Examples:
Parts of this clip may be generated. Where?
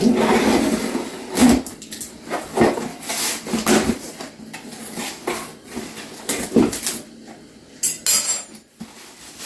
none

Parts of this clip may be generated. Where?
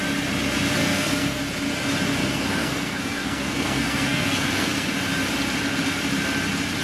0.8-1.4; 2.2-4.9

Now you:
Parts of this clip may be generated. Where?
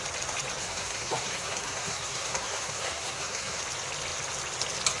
0.6-3.6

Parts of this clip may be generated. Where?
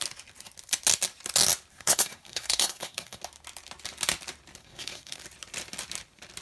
1.7-3.2; 4.6-5.2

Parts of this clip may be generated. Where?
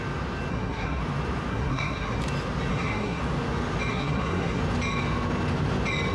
0.5-1.0; 1.5-2.2; 2.7-3.2; 3.9-4.6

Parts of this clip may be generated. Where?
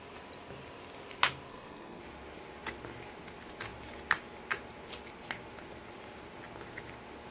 1.5-2.0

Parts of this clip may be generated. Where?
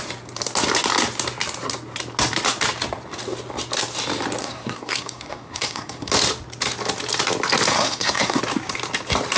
4.4-6.1; 7.7-8.4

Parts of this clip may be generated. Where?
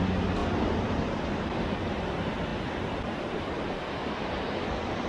none